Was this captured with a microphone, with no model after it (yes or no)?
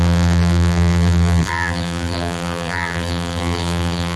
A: no